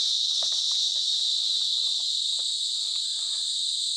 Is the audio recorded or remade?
recorded